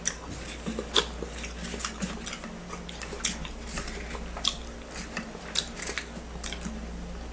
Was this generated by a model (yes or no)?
no